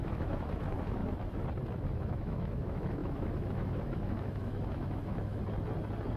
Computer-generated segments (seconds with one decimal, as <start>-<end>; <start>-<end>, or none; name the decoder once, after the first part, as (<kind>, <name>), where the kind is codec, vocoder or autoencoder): 0.0-1.0 (autoencoder, DAC-VAE); 1.7-5.4